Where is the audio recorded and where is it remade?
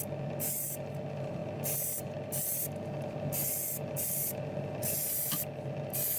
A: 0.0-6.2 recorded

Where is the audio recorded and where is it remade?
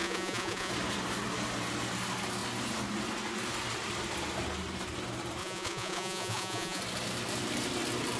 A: 0.0-0.7 remade; 0.7-5.4 recorded; 5.4-6.8 remade; 6.8-8.2 recorded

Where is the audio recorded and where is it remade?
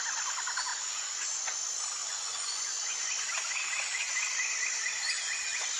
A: 0.0-0.7 recorded; 0.7-1.6 remade; 1.6-2.0 recorded; 2.0-3.1 remade; 3.1-5.8 recorded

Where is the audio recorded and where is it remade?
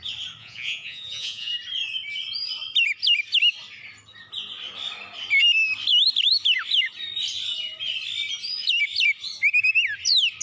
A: 0.0-0.4 recorded; 0.4-1.5 remade; 1.5-10.4 recorded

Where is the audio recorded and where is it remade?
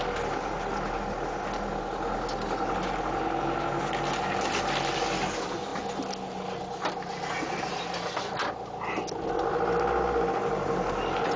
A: 0.0-11.4 recorded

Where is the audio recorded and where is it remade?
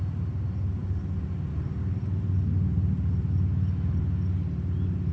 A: 0.0-5.1 recorded